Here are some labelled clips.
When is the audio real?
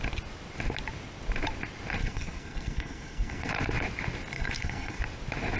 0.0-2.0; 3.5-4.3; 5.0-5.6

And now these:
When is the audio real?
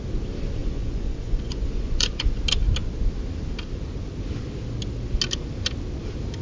0.0-0.6; 2.4-6.4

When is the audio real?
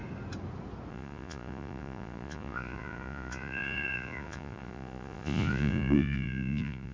0.0-0.9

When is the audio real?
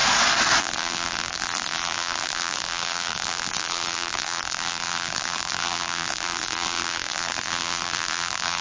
0.0-0.6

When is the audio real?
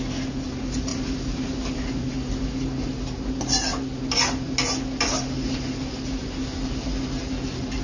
0.0-7.8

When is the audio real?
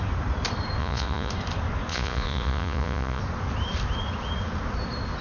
0.0-0.8; 1.3-1.9; 3.2-5.2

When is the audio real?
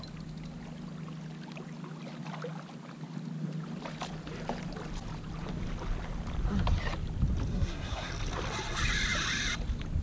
0.0-7.5; 8.1-10.0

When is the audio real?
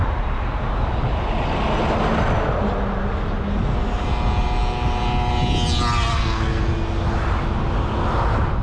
0.0-6.1; 6.6-8.6